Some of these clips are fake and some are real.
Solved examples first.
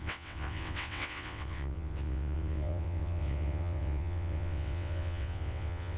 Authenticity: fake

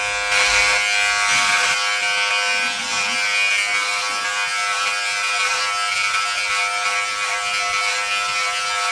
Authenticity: real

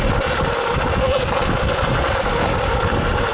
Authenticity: real